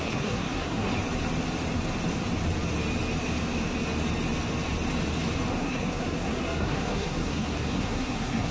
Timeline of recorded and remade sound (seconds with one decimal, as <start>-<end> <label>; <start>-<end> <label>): 0.0-0.9 remade; 0.9-5.6 recorded; 5.6-8.5 remade